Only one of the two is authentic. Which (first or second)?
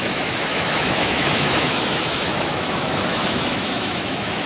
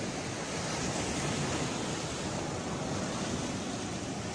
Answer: second